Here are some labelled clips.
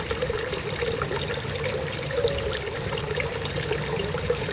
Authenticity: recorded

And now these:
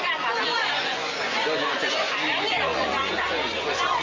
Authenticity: remade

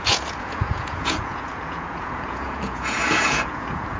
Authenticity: remade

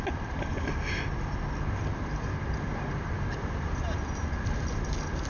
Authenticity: recorded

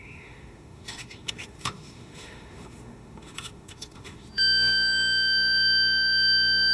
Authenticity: remade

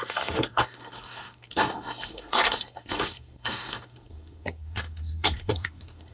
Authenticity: remade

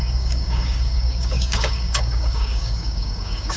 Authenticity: remade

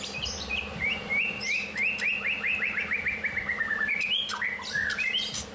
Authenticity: remade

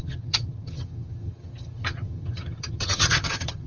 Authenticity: remade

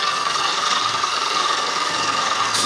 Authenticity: remade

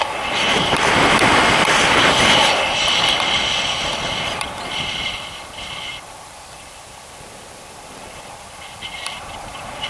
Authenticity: remade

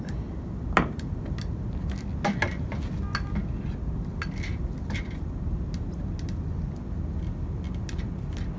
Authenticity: recorded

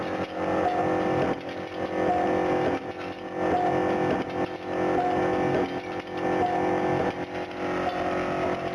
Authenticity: recorded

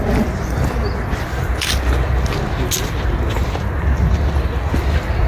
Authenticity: recorded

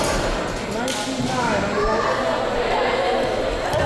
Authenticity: recorded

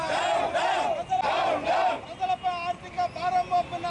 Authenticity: recorded